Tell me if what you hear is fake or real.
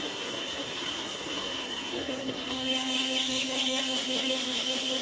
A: fake